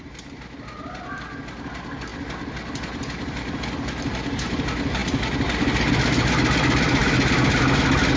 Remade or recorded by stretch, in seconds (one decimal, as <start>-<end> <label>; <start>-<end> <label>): 0.0-8.2 recorded